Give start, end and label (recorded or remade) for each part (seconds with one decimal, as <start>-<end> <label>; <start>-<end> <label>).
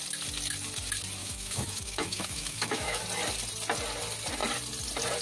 0.0-1.2 recorded; 1.2-3.0 remade; 3.0-5.2 recorded